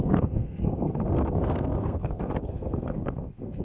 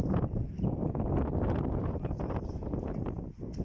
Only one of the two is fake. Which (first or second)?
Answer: first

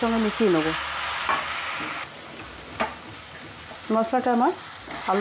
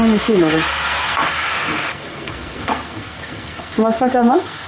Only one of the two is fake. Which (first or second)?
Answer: second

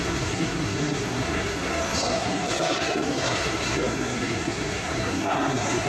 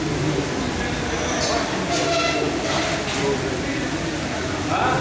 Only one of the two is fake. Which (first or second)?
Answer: first